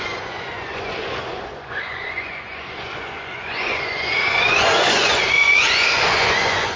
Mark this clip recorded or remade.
remade